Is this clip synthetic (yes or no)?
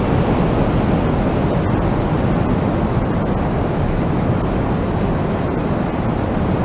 no